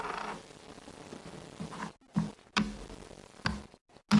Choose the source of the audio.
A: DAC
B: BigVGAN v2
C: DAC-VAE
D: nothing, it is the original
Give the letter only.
D